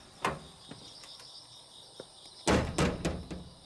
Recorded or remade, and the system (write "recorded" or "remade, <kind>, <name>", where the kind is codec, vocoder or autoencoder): recorded